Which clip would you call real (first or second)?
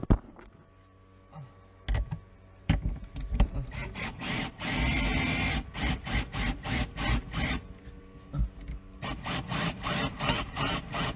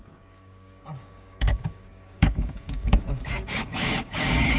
first